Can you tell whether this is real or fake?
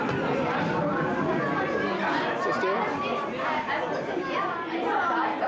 real